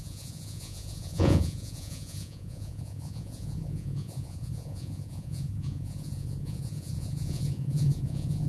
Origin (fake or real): fake